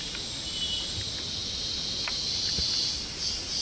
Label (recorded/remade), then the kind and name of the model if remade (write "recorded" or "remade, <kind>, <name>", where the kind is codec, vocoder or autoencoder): recorded